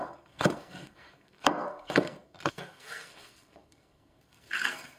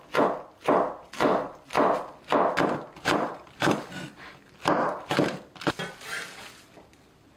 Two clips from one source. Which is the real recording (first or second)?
second